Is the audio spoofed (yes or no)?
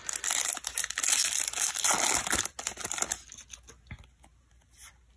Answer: no